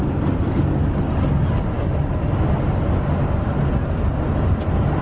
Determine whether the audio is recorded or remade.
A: recorded